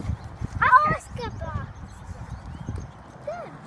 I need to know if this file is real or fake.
real